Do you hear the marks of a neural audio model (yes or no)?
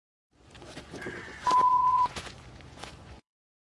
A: yes